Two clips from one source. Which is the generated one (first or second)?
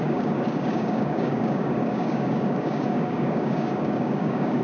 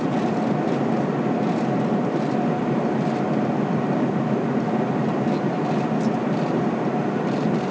first